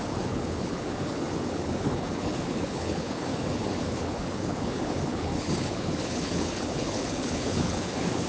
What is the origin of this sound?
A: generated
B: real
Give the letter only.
A